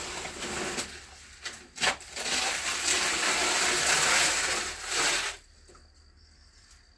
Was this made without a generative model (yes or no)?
yes